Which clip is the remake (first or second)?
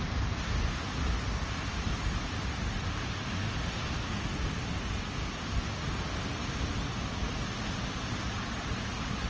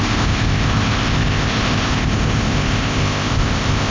second